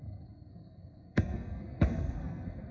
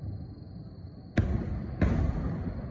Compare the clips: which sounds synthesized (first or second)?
first